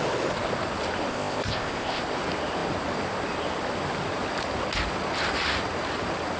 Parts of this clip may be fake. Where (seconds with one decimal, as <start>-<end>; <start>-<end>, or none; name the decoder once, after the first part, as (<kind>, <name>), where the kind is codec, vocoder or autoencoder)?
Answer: 1.1-2.0 (codec, ZipCodec)